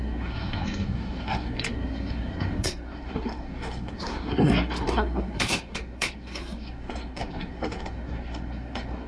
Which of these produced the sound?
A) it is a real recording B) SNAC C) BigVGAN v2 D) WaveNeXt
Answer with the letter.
B